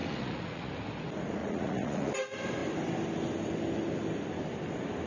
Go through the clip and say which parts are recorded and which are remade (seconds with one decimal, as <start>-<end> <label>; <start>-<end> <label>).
0.0-0.7 remade; 0.7-1.4 recorded; 1.4-2.1 remade; 2.1-5.1 recorded